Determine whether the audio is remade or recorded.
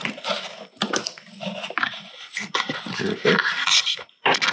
recorded